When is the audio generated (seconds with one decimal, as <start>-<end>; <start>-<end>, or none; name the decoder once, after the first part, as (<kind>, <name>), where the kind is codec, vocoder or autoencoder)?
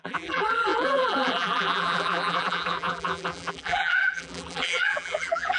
0.0-5.6 (vocoder, BigVGAN v2)